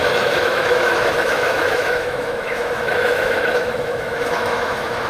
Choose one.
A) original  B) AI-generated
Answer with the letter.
B